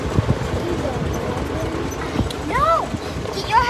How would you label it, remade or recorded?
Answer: recorded